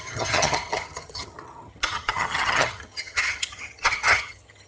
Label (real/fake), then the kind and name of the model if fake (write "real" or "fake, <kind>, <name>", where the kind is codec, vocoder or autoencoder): fake, vocoder, HiFi-GAN